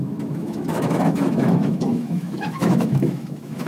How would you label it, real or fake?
fake